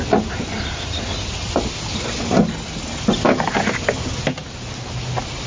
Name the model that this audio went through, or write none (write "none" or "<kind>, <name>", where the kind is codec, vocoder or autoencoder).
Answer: none